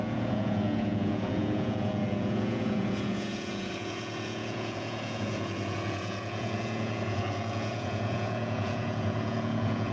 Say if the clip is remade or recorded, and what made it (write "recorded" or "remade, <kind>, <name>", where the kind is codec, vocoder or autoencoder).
remade, vocoder, Vocos